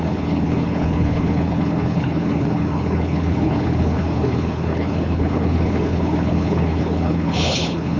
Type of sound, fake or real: fake